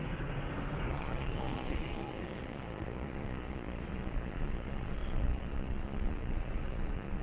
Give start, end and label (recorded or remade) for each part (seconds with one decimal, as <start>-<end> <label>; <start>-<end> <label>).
0.0-0.9 recorded; 0.9-7.2 remade

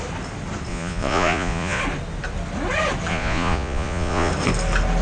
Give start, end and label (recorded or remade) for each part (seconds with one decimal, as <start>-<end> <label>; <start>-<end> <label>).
0.0-0.7 recorded; 0.7-1.8 remade; 1.8-3.1 recorded; 3.1-4.3 remade; 4.3-5.0 recorded

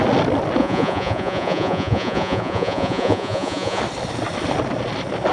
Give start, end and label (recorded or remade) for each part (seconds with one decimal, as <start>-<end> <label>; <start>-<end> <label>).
0.0-0.6 recorded; 0.6-3.8 remade; 3.8-5.3 recorded